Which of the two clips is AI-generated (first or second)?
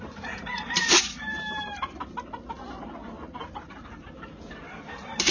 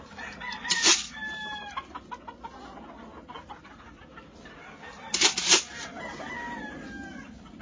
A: first